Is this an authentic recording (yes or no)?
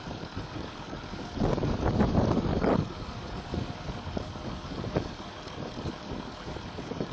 no